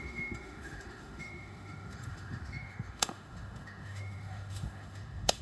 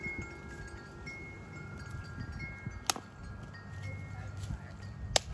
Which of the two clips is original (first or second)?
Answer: second